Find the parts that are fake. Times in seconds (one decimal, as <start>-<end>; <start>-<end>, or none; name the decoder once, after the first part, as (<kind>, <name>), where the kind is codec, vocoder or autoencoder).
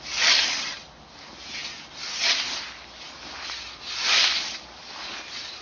none